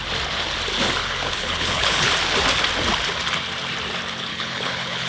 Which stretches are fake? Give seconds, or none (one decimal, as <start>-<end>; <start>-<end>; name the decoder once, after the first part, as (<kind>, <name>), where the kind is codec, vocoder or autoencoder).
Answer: 1.0-2.1 (codec, HILCodec); 4.3-5.1